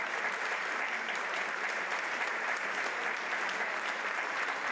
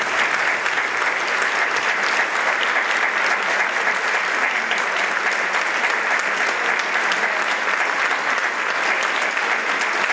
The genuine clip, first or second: second